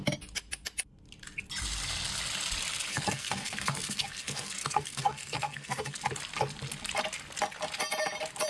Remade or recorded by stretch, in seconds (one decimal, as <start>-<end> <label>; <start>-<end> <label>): 0.0-2.9 recorded; 2.9-6.0 remade; 6.0-8.5 recorded